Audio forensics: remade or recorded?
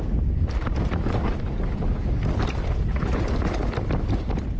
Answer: recorded